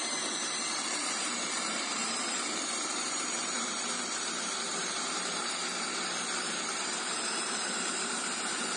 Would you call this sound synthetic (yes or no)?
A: yes